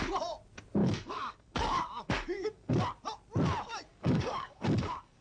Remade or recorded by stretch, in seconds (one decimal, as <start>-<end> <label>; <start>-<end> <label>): 0.0-0.8 recorded; 0.8-2.7 remade; 2.7-3.9 recorded; 3.9-5.2 remade